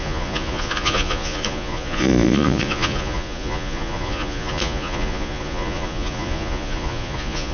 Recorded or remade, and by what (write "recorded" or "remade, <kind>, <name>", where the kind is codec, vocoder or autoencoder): remade, vocoder, Vocos